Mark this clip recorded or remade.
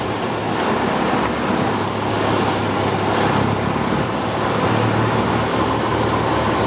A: recorded